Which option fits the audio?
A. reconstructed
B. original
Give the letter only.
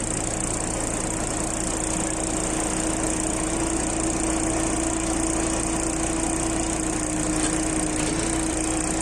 B